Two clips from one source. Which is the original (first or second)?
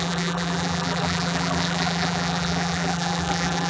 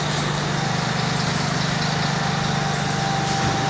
second